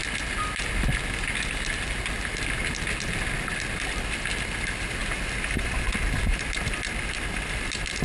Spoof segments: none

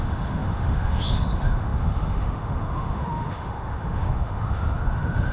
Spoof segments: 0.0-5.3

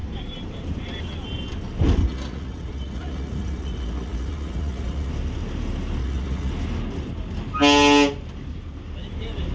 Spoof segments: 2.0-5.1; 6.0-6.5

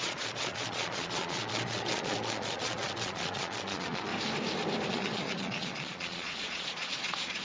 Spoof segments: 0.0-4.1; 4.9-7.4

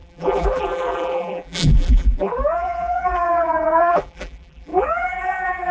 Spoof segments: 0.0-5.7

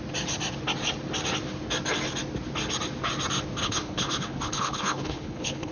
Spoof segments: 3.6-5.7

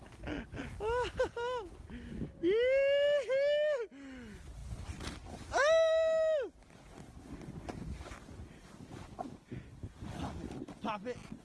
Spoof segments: none